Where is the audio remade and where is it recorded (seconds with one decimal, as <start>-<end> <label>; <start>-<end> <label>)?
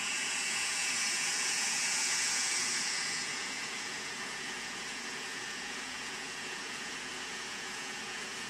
0.0-8.5 remade